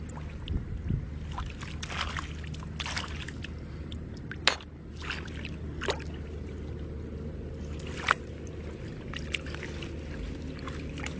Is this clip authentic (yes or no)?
yes